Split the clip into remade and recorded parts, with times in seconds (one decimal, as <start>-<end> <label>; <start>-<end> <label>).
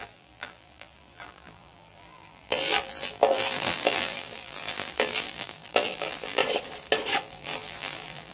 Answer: 0.0-6.4 remade; 6.4-7.2 recorded; 7.2-8.3 remade